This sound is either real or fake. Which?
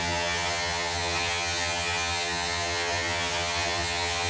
fake